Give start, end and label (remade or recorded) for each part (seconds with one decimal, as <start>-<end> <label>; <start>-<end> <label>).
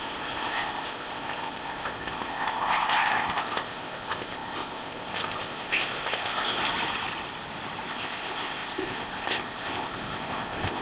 0.0-6.6 remade; 6.6-7.9 recorded; 7.9-10.8 remade